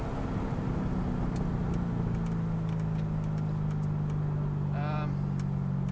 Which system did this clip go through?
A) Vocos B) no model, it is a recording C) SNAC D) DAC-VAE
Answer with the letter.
B